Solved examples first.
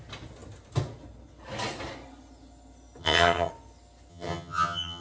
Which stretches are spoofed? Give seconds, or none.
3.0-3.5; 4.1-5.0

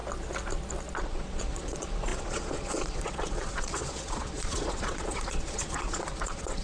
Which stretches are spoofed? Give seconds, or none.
1.0-6.6

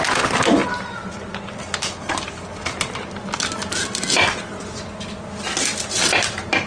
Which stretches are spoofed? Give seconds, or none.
none

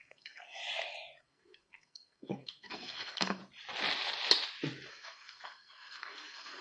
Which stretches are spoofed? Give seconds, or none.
0.0-0.6; 1.2-3.4; 4.9-6.6

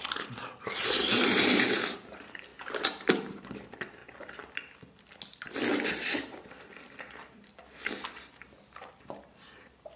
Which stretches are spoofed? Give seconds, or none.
0.0-4.0; 8.9-10.0

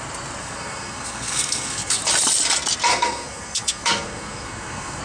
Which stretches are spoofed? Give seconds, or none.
0.4-2.0; 2.9-5.0

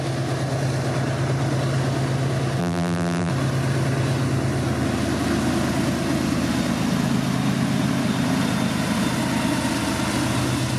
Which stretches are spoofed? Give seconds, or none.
2.6-3.3